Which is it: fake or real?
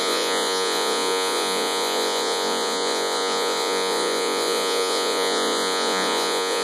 fake